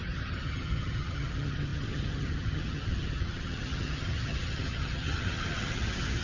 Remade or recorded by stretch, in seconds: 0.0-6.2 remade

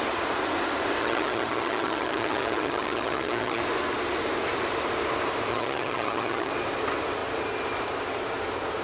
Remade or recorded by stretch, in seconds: 0.0-1.0 recorded; 1.0-3.6 remade; 3.6-5.5 recorded; 5.5-6.5 remade; 6.5-8.8 recorded

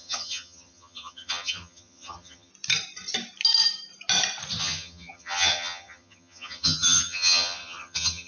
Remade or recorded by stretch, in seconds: 0.0-2.5 remade; 2.5-4.6 recorded; 4.6-8.3 remade

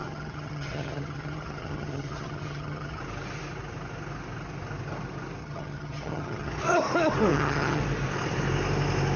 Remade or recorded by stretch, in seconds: 0.0-3.0 remade; 3.0-5.4 recorded; 5.4-6.5 remade; 6.5-7.3 recorded; 7.3-7.8 remade; 7.8-9.2 recorded